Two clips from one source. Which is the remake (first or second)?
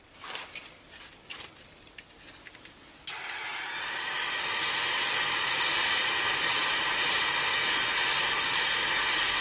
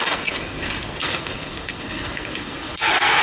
second